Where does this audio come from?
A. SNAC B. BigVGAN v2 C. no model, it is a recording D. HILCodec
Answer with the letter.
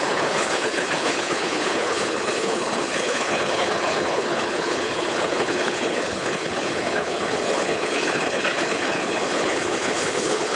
D